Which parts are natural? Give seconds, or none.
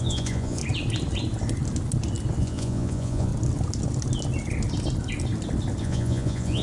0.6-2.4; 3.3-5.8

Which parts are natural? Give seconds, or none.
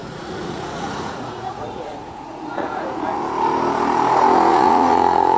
3.2-4.5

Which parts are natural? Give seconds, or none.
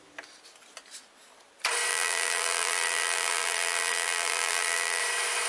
0.0-1.9; 5.0-5.5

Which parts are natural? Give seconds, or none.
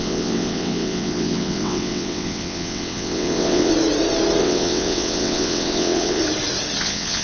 3.7-4.4; 6.2-6.8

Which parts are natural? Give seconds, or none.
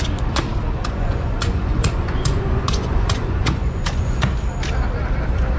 0.0-0.8; 4.2-5.6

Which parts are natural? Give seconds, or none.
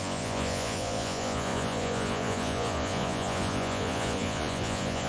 none